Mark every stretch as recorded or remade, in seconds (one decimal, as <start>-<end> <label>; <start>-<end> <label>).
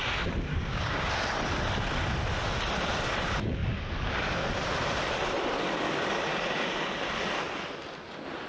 0.0-0.5 recorded; 0.5-1.1 remade; 1.1-8.5 recorded